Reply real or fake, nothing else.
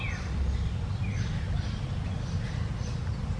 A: real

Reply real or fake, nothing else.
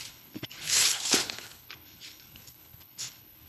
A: fake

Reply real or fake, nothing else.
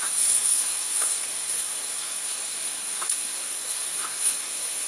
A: fake